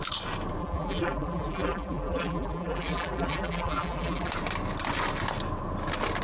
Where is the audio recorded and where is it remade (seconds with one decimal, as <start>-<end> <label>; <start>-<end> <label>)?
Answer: 0.0-0.6 recorded; 0.6-4.3 remade; 4.3-6.2 recorded